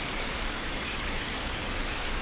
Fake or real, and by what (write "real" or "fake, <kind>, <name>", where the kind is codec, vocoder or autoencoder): fake, codec, DAC